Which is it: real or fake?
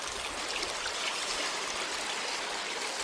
real